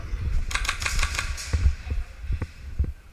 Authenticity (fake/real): real